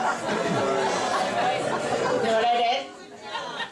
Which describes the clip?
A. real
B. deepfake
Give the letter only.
A